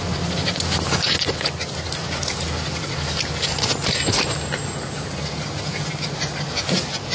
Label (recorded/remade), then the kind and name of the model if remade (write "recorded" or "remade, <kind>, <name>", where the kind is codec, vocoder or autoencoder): recorded